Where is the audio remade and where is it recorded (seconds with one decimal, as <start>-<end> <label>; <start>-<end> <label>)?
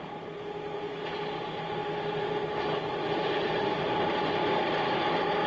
0.0-5.5 recorded